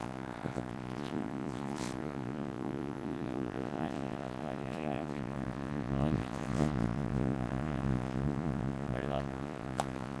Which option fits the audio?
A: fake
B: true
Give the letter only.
A